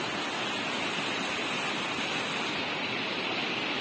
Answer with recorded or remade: recorded